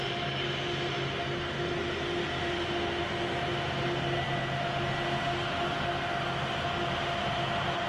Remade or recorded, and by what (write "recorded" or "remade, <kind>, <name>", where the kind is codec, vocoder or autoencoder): recorded